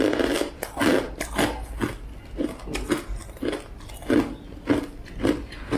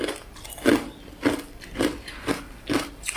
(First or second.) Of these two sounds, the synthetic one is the second